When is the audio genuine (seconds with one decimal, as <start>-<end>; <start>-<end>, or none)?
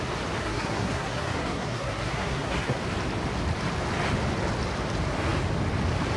0.0-0.4; 2.8-6.2